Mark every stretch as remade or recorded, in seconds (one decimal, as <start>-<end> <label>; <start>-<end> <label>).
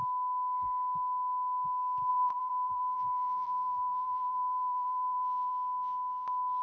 0.0-2.1 recorded; 2.1-5.5 remade; 5.5-6.6 recorded